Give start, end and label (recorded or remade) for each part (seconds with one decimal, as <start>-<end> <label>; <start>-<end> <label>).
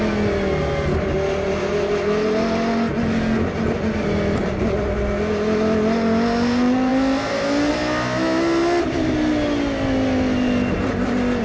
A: 0.0-11.4 recorded